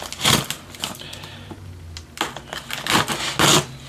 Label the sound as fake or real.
real